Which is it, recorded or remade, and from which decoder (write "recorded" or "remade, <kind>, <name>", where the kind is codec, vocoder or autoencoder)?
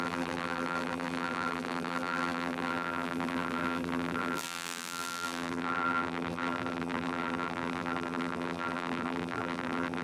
remade, vocoder, BigVGAN v2